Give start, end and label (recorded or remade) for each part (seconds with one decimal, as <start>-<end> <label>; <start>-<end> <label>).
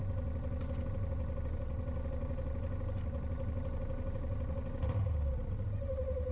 0.0-6.3 recorded